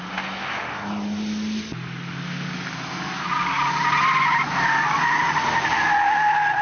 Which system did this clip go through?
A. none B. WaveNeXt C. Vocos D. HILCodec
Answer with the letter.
A